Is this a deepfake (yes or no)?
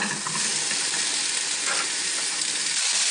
no